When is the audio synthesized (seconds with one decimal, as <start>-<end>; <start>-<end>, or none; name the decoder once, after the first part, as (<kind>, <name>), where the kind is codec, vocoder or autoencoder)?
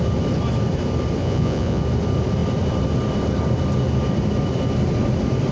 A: 1.2-1.8 (vocoder, Vocos)